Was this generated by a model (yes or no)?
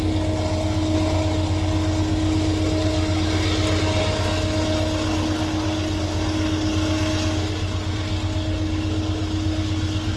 no